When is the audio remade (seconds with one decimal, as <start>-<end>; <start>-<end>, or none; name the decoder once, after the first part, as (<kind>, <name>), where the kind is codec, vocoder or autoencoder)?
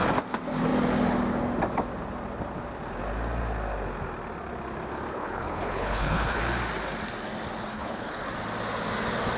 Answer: 5.1-6.4 (codec, HILCodec); 7.7-8.3